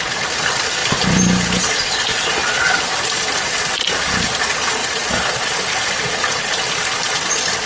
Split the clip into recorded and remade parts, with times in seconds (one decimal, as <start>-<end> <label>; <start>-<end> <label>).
0.0-7.7 recorded